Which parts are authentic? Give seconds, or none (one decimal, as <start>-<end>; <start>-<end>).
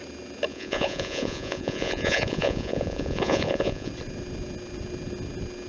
0.0-0.5; 3.9-5.7